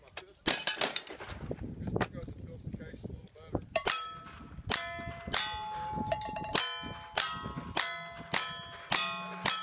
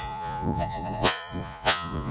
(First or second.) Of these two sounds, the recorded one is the first